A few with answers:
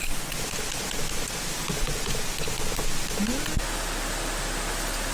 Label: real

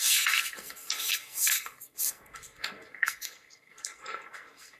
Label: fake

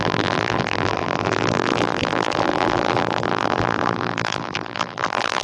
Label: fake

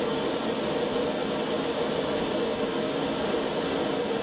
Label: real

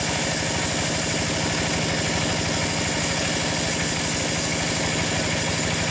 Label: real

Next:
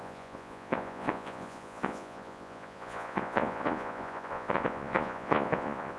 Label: fake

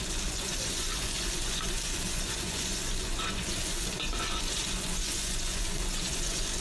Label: fake